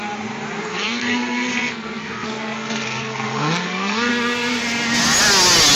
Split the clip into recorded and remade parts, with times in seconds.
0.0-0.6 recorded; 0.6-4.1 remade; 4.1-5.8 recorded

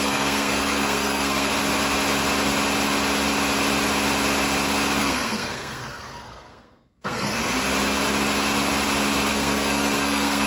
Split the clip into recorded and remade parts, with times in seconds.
0.0-1.5 remade; 1.5-5.0 recorded; 5.0-7.3 remade; 7.3-9.3 recorded; 9.3-10.5 remade

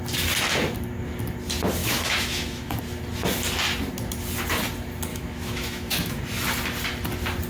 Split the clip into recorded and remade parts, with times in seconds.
0.0-1.8 recorded; 1.8-2.8 remade; 2.8-5.1 recorded; 5.1-6.2 remade; 6.2-7.5 recorded

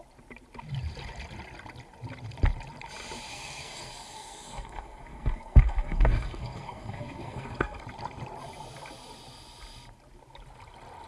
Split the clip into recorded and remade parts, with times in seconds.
0.0-3.3 recorded; 3.3-7.8 remade; 7.8-11.1 recorded

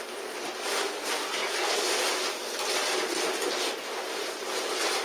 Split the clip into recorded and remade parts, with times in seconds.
0.0-5.0 recorded